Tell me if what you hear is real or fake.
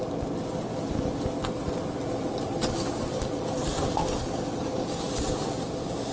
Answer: real